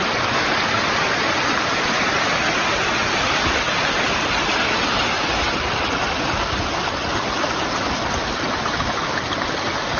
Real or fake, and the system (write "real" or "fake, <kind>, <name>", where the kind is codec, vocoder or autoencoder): real